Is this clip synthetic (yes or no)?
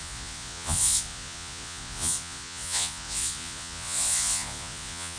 yes